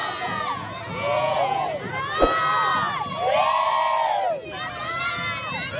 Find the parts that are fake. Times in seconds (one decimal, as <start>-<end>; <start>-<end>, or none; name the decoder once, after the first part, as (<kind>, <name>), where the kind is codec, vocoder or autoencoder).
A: 0.0-1.9 (vocoder, Vocos)